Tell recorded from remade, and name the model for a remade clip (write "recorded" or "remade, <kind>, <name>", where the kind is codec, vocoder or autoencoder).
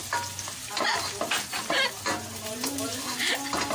recorded